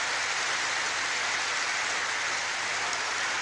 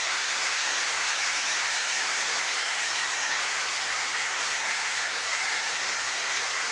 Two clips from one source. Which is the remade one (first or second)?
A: second